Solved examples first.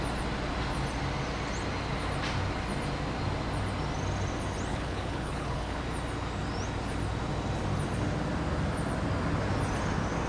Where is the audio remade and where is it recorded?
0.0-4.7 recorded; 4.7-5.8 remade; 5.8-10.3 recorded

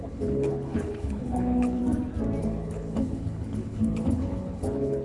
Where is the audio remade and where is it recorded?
0.0-1.8 remade; 1.8-2.4 recorded; 2.4-5.0 remade